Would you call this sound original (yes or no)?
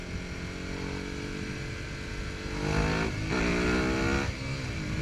yes